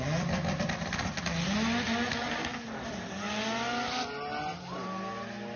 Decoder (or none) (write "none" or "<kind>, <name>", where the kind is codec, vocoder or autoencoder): none